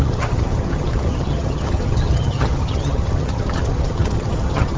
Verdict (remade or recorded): remade